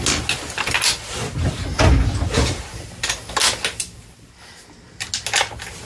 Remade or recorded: recorded